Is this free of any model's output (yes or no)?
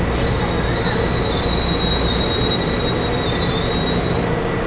yes